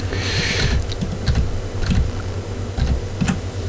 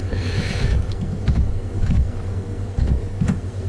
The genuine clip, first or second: first